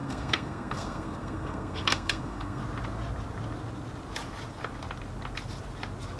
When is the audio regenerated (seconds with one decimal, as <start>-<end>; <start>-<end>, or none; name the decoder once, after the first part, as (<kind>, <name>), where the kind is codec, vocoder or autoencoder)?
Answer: 0.0-2.6 (codec, SNAC)